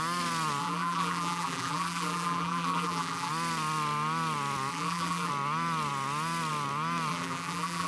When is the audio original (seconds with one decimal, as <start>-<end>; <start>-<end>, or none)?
0.0-0.6; 3.3-4.7; 5.3-7.1